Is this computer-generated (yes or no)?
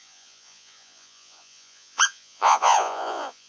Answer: yes